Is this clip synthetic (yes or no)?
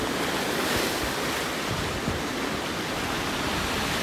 no